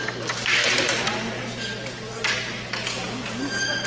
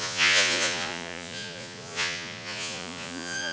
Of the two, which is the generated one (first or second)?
second